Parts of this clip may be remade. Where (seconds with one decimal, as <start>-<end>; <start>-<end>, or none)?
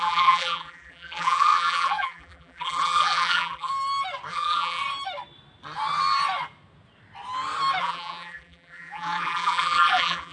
0.0-3.7; 4.3-4.8; 7.8-10.3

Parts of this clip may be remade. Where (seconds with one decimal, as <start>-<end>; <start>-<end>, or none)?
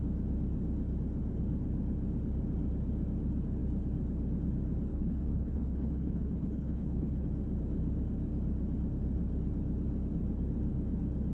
4.9-7.3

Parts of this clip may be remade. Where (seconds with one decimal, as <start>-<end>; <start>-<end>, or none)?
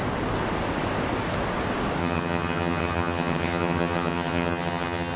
2.0-5.2